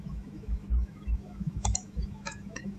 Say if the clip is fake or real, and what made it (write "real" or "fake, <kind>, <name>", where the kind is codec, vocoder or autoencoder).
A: fake, autoencoder, DAC-VAE